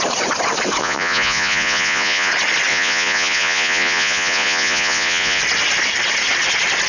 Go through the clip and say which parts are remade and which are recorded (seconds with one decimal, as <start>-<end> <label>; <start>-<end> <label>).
0.0-0.8 recorded; 0.8-2.3 remade; 2.3-2.7 recorded; 2.7-5.4 remade; 5.4-6.9 recorded